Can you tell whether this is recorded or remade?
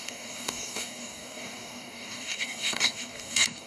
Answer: remade